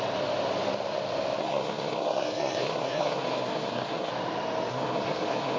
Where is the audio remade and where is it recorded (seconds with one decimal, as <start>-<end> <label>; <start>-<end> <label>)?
0.0-1.4 recorded; 1.4-4.1 remade; 4.1-4.7 recorded; 4.7-5.6 remade